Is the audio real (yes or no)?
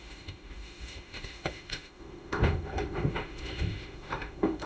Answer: no